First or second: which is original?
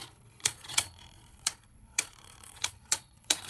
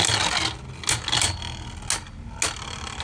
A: second